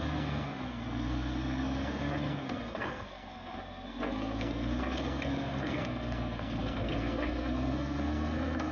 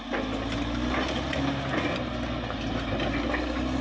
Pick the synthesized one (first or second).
first